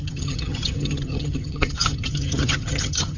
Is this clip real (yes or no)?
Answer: no